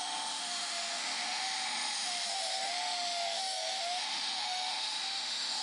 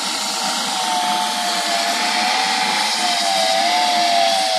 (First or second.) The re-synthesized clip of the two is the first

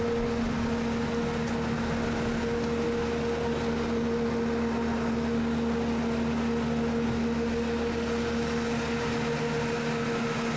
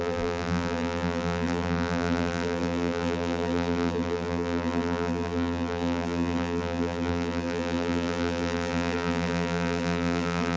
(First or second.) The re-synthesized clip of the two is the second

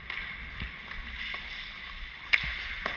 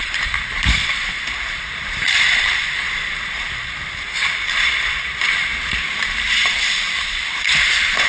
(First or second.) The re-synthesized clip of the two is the second